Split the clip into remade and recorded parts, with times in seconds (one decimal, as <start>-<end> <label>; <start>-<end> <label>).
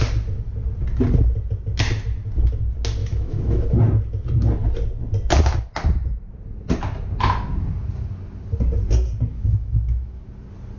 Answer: 0.0-3.0 recorded; 3.0-3.8 remade; 3.8-9.3 recorded; 9.3-10.2 remade; 10.2-10.8 recorded